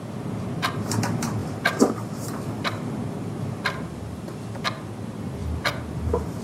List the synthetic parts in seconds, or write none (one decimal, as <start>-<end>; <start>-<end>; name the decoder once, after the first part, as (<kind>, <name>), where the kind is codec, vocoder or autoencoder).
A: 0.0-5.4 (vocoder, BigVGAN v2)